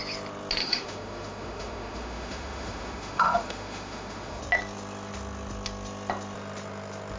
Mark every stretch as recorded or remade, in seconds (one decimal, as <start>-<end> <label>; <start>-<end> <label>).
0.0-0.6 recorded; 0.6-4.4 remade; 4.4-7.2 recorded